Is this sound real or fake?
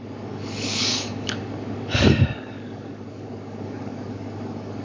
fake